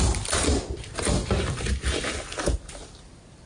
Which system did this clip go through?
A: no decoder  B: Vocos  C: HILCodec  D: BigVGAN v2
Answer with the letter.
A